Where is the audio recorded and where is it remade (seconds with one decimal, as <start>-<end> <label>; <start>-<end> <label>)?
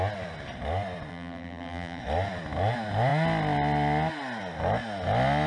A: 0.0-1.1 recorded; 1.1-2.0 remade; 2.0-5.5 recorded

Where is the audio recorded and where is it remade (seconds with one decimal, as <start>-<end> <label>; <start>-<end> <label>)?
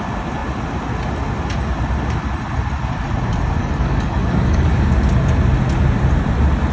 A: 0.0-3.6 recorded; 3.6-4.9 remade; 4.9-6.7 recorded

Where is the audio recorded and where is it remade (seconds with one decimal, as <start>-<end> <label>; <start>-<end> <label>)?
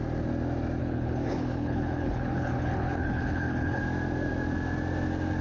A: 0.0-0.8 recorded; 0.8-3.8 remade; 3.8-5.4 recorded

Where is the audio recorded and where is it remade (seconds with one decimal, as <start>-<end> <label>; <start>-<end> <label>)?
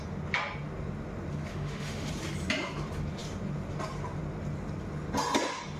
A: 0.0-1.5 recorded; 1.5-2.1 remade; 2.1-5.8 recorded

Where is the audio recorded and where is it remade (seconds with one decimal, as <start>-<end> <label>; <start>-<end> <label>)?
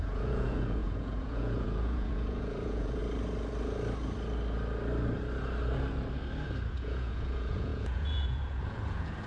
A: 0.0-3.0 remade; 3.0-6.7 recorded; 6.7-9.3 remade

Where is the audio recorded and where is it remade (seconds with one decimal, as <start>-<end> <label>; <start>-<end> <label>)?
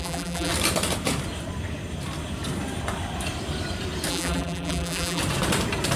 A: 0.0-0.5 remade; 0.5-4.1 recorded; 4.1-5.2 remade; 5.2-6.0 recorded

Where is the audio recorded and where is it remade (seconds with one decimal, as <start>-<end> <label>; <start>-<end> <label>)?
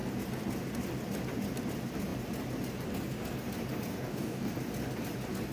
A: 0.0-3.9 recorded; 3.9-4.5 remade; 4.5-5.5 recorded